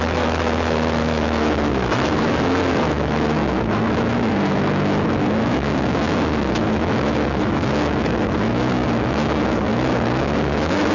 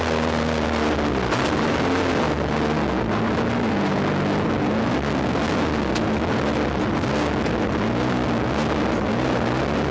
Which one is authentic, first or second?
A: second